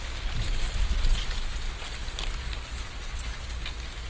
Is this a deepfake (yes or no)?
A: no